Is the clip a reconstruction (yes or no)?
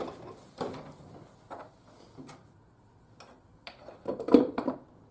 yes